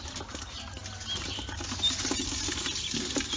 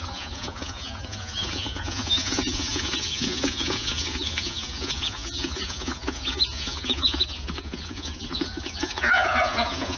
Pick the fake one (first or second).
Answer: second